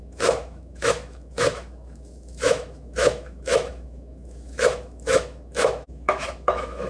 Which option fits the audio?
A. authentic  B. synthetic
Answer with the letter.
B